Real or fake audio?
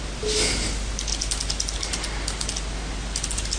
real